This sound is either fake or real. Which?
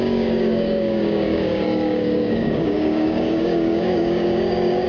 fake